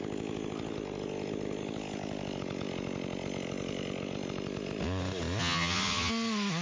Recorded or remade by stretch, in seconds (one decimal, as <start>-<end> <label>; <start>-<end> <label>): 0.0-5.4 recorded; 5.4-6.1 remade; 6.1-6.6 recorded